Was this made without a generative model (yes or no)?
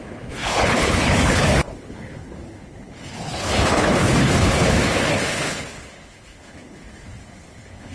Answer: no